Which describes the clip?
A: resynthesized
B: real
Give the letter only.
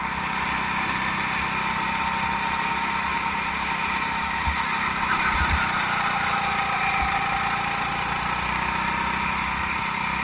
B